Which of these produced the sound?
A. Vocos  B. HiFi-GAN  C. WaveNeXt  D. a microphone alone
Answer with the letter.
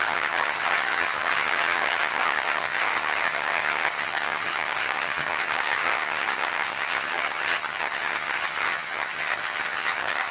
B